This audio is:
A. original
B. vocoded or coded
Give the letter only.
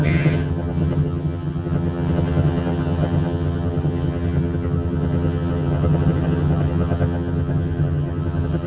B